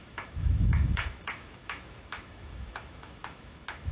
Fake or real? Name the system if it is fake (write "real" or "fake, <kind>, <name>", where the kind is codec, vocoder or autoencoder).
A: fake, autoencoder, DAC-VAE